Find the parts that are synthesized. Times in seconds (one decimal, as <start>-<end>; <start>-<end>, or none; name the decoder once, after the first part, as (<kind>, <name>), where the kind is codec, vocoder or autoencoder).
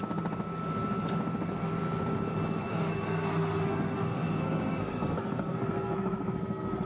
2.7-6.9 (codec, SNAC)